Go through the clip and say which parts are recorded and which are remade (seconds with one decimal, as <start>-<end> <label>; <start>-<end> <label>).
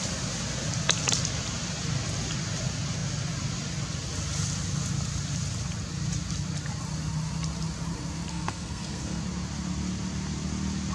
0.0-8.3 recorded; 8.3-9.2 remade; 9.2-10.9 recorded